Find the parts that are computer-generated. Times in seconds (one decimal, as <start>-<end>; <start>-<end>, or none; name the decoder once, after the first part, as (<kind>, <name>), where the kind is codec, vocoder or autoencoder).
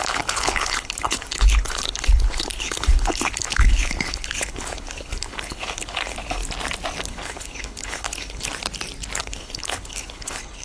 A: 0.0-6.4 (codec, HILCodec); 7.0-8.5; 9.2-10.6